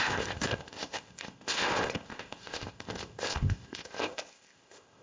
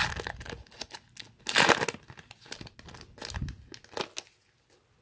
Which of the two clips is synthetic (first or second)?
first